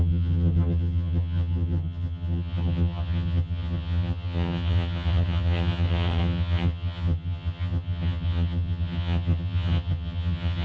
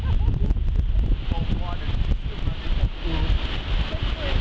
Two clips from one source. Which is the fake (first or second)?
first